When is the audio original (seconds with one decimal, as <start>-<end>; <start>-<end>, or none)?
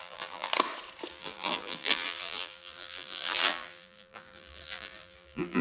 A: 0.5-1.1